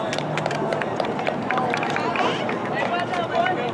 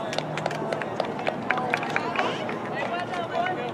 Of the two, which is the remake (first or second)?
first